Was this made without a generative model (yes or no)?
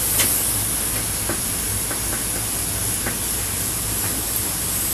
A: yes